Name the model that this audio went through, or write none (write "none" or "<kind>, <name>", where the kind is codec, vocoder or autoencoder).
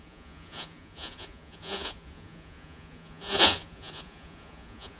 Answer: vocoder, Vocos